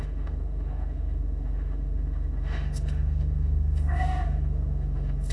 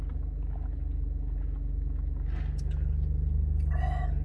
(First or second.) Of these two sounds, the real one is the second